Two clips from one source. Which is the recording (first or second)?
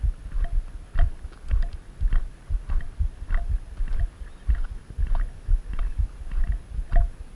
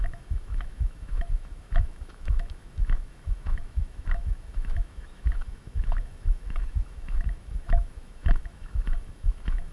first